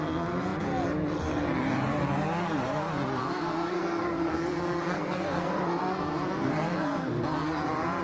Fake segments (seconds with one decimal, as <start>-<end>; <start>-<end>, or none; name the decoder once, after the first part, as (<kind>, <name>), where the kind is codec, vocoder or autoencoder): 3.2-7.2 (codec, SNAC)